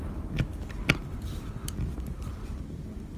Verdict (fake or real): fake